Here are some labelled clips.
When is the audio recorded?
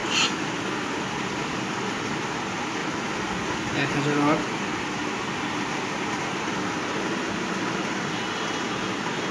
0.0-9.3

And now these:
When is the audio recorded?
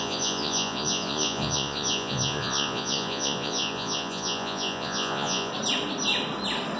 5.5-6.8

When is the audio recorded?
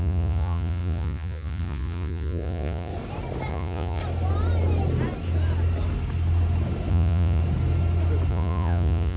2.9-3.5; 4.0-6.9; 7.4-8.3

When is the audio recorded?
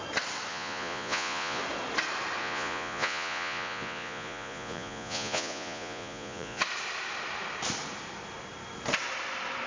0.0-0.5; 1.6-2.4; 6.6-9.7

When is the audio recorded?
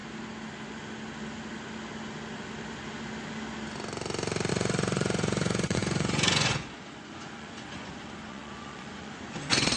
0.0-4.5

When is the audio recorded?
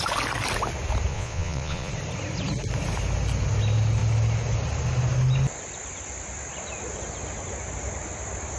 0.0-1.1; 1.9-8.6